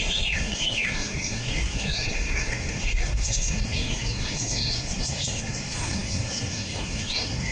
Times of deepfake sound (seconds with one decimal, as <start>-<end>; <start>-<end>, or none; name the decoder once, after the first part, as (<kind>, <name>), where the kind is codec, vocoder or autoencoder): 0.0-7.5 (codec, SNAC)